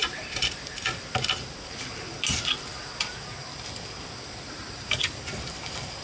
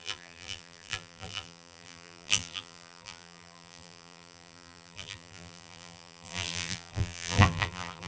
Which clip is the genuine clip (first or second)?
first